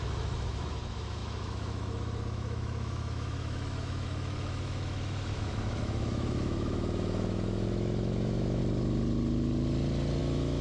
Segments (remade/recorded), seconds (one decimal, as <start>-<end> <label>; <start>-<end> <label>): 0.0-8.6 remade; 8.6-10.2 recorded; 10.2-10.6 remade